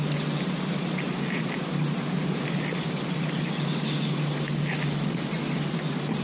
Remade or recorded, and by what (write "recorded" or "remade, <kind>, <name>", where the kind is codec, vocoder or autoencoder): recorded